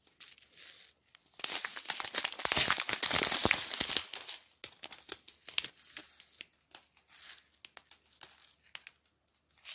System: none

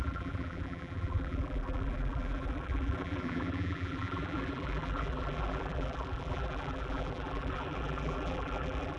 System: vocoder, BigVGAN v2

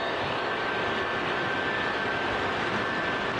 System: none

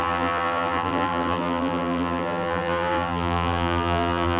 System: vocoder, BigVGAN v2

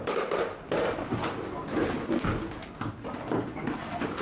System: none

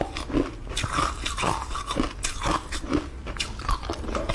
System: none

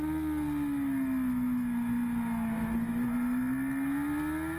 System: none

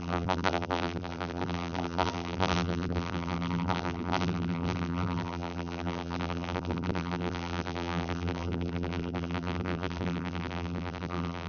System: vocoder, BigVGAN v2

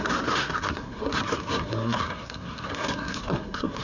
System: codec, SNAC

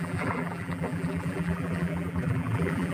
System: vocoder, BigVGAN v2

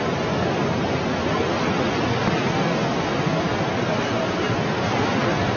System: none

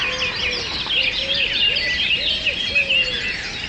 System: none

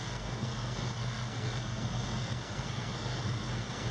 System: codec, SNAC